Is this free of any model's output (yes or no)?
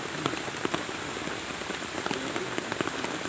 yes